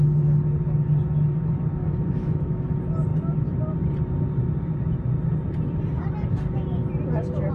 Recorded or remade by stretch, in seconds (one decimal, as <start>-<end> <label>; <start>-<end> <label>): 0.0-1.8 recorded; 1.8-2.7 remade; 2.7-7.5 recorded